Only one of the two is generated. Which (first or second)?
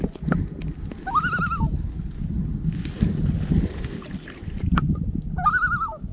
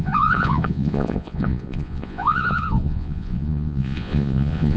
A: second